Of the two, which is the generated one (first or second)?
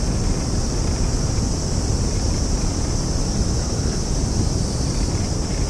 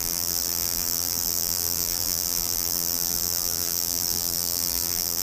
second